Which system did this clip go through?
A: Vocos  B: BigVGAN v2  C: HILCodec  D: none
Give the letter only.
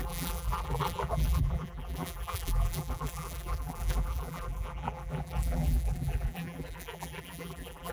B